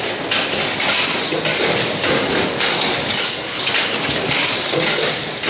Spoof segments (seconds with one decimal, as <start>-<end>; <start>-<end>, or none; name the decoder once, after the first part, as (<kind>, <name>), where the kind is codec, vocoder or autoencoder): 1.5-4.8 (codec, DAC)